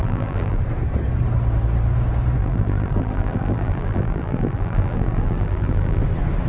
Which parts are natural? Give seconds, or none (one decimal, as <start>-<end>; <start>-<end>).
0.6-2.4; 6.0-6.5